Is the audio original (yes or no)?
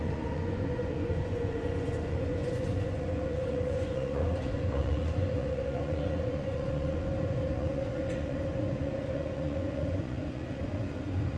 no